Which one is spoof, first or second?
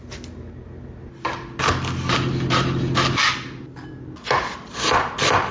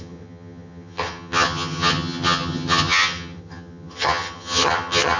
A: second